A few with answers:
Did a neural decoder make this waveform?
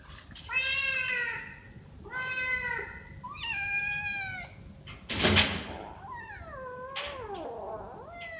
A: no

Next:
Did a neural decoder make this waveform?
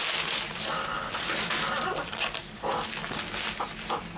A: no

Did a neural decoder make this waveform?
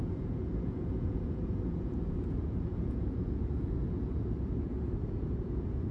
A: yes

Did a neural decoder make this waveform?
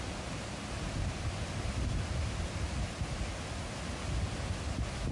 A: no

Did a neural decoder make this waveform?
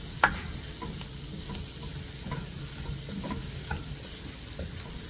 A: no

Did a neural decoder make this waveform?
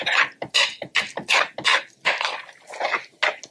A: no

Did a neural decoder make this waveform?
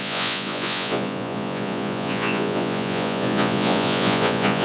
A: yes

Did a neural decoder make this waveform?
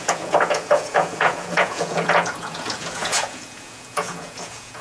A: yes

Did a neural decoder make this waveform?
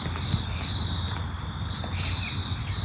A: no